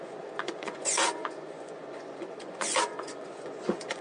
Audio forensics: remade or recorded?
remade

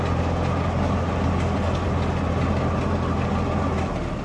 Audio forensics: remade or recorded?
recorded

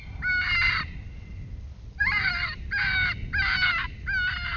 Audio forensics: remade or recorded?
recorded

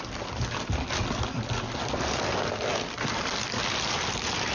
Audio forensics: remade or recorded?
recorded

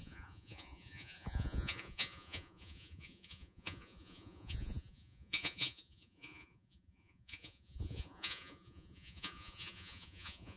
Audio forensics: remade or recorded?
remade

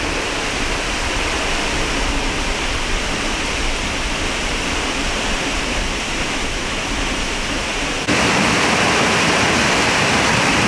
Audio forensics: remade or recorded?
remade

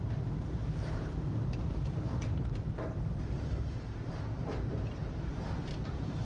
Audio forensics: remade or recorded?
remade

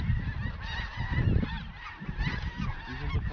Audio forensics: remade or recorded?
recorded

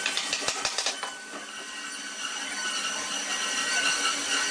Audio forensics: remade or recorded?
recorded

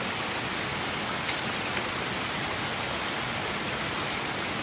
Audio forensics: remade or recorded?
recorded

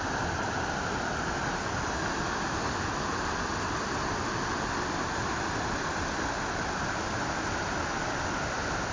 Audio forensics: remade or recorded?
recorded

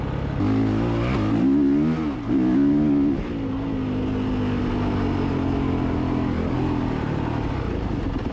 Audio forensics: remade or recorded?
recorded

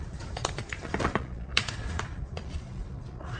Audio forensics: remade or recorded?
remade